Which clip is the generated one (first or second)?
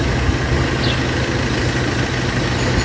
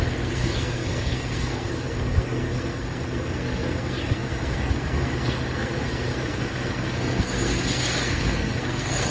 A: second